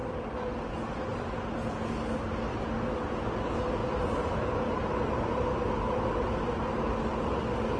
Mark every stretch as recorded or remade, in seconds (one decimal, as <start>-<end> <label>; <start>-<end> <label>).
0.0-7.8 recorded